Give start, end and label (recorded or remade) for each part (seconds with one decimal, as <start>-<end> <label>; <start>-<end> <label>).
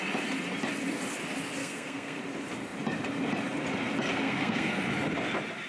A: 0.0-1.6 recorded; 1.6-2.2 remade; 2.2-4.1 recorded; 4.1-4.7 remade; 4.7-5.7 recorded